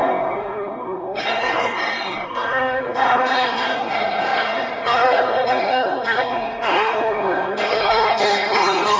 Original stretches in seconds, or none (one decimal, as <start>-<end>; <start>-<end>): none